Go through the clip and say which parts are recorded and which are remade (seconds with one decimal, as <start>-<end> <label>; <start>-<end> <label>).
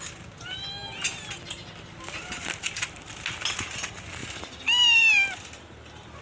0.0-4.2 recorded; 4.2-6.2 remade